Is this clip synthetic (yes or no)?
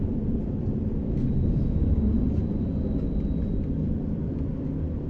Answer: yes